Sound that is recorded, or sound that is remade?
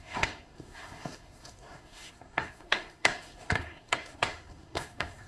remade